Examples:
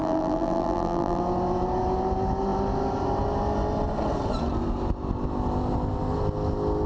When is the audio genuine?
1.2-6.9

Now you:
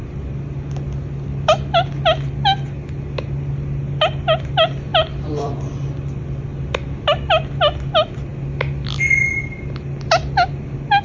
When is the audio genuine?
0.0-4.9; 5.5-11.0

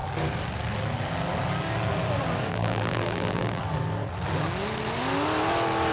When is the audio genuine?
0.0-2.5; 3.6-5.9

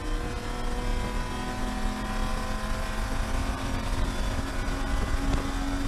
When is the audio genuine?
0.0-2.3; 4.5-5.9

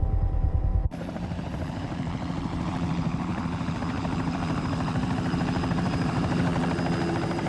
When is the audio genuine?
6.5-7.1

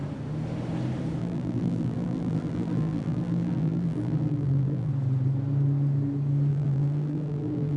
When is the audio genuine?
0.0-1.2; 4.9-6.5

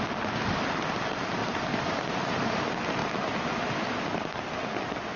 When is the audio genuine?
0.0-1.4; 2.6-5.2